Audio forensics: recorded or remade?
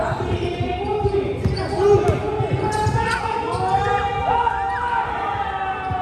recorded